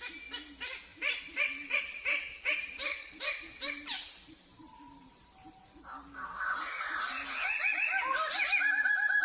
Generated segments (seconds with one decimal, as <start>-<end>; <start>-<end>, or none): 0.9-5.8